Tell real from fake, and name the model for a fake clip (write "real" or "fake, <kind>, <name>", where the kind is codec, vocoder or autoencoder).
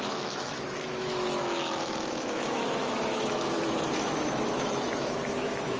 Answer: fake, autoencoder, DAC-VAE